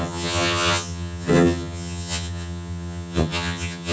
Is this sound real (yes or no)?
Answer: no